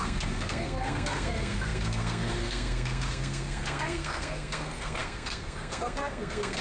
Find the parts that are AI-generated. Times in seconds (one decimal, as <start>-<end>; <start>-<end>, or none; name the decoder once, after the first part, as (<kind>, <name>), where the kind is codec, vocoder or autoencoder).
0.0-6.6 (codec, SNAC)